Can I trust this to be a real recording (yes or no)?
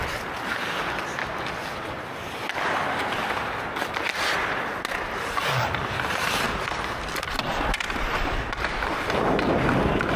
yes